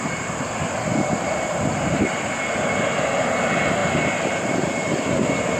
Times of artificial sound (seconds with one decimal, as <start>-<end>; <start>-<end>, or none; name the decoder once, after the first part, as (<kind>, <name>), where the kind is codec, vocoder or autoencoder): 0.0-5.6 (vocoder, BigVGAN v2)